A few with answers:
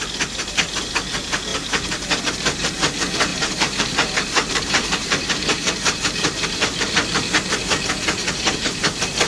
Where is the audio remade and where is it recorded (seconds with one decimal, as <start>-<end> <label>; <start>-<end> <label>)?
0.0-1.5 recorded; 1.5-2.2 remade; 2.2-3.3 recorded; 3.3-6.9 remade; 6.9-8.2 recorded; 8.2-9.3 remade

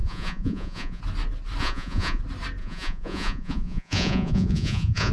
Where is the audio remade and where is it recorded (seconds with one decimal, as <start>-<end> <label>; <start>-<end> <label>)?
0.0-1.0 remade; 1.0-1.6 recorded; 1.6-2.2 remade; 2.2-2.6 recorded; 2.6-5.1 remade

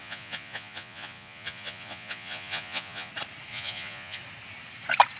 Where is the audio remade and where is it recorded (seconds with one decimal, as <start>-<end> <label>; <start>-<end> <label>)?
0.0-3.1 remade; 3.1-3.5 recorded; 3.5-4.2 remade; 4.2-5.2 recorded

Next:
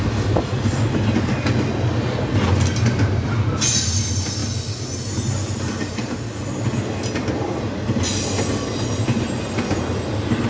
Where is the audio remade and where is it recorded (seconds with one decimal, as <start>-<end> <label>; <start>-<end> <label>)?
0.0-10.5 recorded